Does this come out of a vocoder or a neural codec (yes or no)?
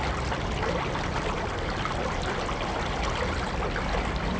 no